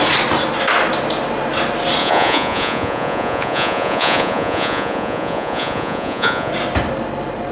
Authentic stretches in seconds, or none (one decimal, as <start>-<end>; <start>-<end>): 0.0-2.0; 6.5-7.5